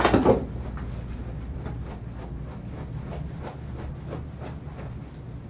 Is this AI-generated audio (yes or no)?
no